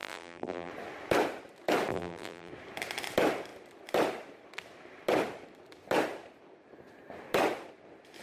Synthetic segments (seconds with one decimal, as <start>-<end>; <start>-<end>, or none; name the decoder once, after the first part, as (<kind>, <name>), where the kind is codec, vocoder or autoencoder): 0.0-0.7 (vocoder, BigVGAN v2); 1.9-2.5